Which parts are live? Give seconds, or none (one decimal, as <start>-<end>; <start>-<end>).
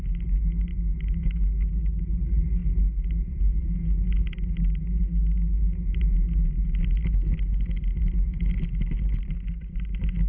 0.0-0.7; 1.8-10.3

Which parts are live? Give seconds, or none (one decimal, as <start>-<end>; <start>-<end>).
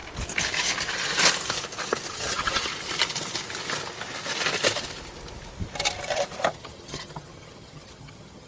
0.0-2.1; 2.7-6.5